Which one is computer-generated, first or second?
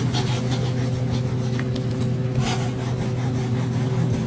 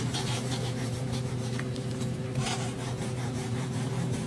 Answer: second